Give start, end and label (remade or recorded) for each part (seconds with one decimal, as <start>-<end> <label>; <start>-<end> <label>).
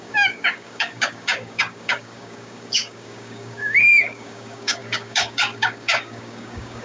0.0-6.8 remade